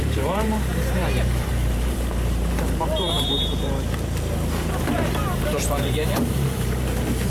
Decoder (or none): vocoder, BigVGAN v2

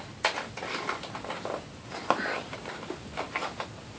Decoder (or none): vocoder, BigVGAN v2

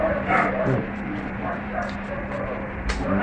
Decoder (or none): vocoder, BigVGAN v2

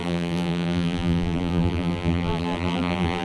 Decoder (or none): vocoder, BigVGAN v2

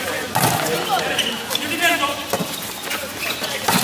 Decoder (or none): none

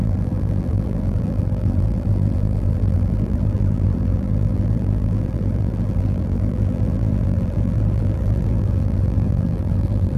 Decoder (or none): vocoder, BigVGAN v2